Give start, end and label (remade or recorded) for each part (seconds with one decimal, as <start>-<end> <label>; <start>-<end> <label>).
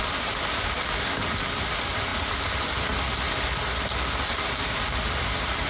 0.0-5.7 recorded